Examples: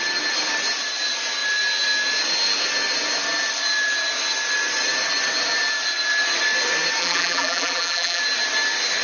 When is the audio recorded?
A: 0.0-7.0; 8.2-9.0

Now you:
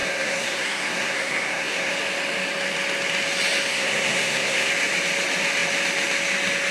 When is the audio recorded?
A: 1.9-3.7; 4.7-6.7

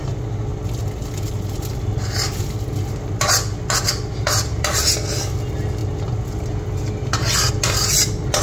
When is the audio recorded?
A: 0.0-8.4

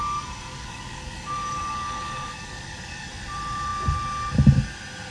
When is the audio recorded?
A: 0.0-0.5; 3.1-5.1

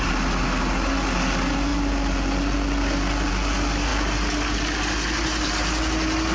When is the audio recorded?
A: 0.0-6.3